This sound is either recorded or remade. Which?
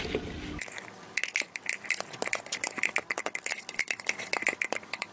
recorded